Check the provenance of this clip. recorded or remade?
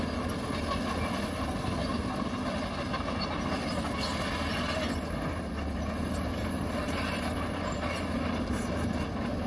recorded